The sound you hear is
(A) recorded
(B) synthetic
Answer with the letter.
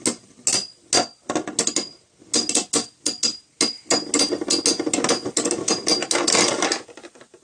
A